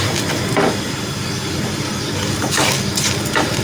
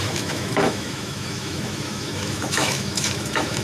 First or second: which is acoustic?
first